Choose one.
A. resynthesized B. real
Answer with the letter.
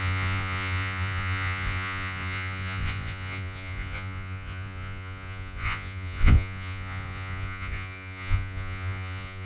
A